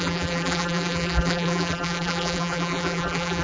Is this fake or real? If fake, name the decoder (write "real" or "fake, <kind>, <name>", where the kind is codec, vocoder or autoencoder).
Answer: fake, vocoder, BigVGAN v2